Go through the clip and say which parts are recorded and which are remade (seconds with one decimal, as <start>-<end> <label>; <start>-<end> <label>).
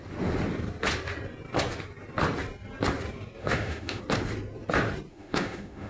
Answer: 0.0-3.4 recorded; 3.4-4.0 remade; 4.0-5.1 recorded; 5.1-5.9 remade